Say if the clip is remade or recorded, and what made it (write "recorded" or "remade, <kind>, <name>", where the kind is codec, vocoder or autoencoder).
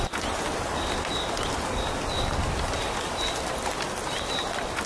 recorded